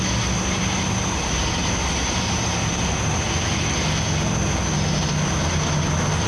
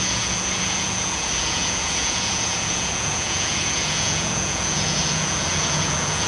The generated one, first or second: second